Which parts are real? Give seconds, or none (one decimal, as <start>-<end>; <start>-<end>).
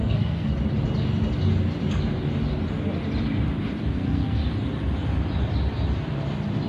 0.5-3.9; 4.4-6.7